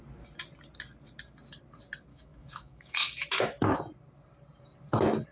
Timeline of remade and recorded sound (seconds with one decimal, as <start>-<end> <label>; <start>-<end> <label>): 0.0-2.1 recorded; 2.1-3.8 remade; 3.8-5.3 recorded